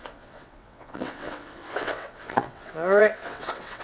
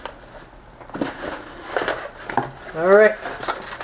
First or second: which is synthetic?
first